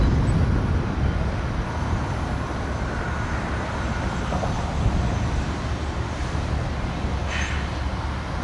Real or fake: real